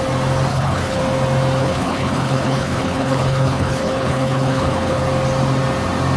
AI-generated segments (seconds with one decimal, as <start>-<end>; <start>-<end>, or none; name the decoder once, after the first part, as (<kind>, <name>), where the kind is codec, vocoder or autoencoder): 0.5-1.0 (codec, HILCodec); 1.6-5.0